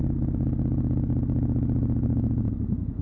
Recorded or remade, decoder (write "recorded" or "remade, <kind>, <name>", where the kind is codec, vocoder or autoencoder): recorded